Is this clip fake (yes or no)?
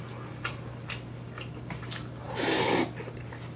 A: no